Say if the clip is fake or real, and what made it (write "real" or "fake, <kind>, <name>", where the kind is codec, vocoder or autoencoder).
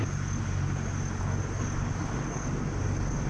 real